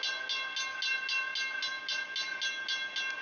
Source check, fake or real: real